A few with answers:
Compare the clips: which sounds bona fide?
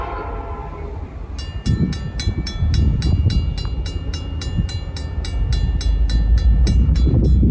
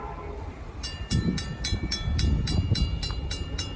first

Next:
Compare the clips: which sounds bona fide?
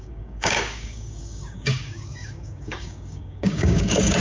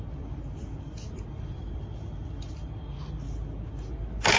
second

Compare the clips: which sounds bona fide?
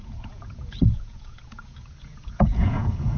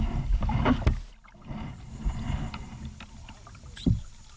second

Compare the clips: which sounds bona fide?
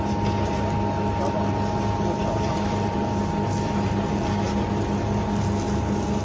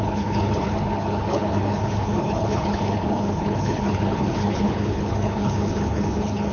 first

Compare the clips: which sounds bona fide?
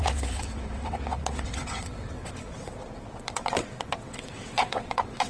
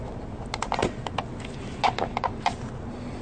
second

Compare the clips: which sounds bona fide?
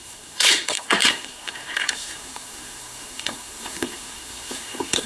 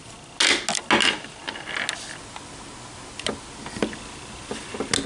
second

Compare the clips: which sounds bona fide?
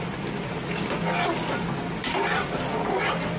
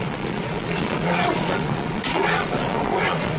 first